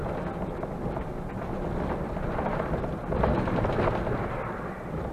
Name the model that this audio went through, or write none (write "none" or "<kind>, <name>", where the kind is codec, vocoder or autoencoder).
none